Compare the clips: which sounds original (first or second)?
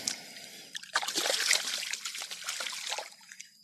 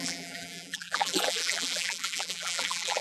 first